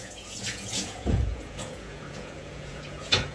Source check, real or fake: fake